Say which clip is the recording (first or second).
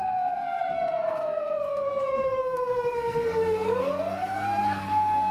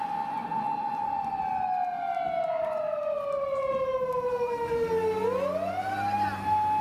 second